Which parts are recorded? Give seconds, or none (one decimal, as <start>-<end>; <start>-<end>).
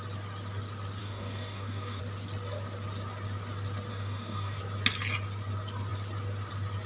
0.0-1.0; 2.0-3.9; 4.6-6.9